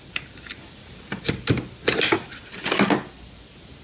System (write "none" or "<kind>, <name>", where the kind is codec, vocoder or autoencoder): none